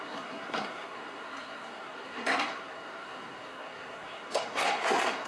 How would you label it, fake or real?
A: fake